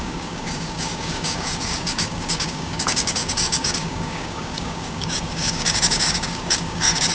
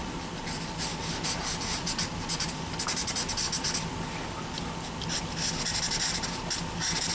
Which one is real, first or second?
second